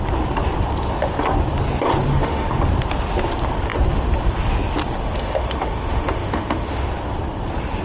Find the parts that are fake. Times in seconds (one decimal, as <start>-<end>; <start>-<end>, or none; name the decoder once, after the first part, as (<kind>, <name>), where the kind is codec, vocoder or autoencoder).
2.1-2.6 (autoencoder, DAC-VAE); 5.0-6.9